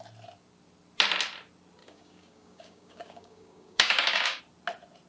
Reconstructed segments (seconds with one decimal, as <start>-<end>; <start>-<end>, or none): 1.8-4.4